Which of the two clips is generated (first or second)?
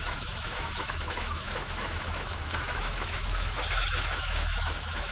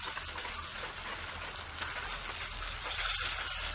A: first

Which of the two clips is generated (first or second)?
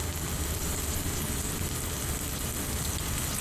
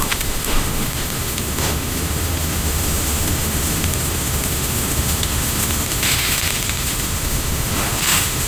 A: second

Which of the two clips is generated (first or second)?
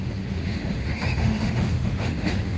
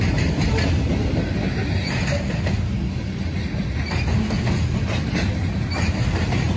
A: first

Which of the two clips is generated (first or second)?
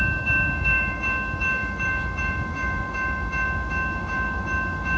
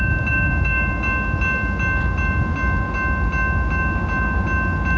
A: first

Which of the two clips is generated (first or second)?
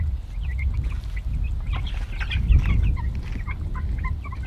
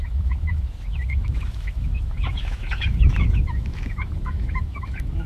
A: second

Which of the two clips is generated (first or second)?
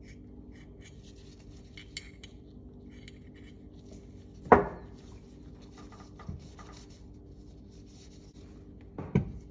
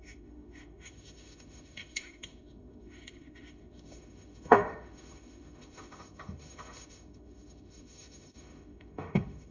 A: second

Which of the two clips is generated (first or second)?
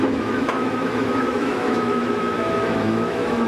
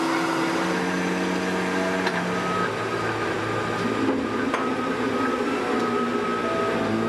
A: first